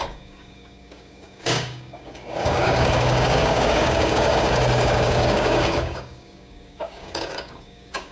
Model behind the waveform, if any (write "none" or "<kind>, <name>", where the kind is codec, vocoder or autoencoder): codec, DAC